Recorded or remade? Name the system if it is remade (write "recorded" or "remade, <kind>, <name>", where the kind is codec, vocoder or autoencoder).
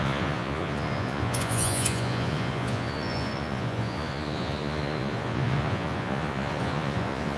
remade, vocoder, Vocos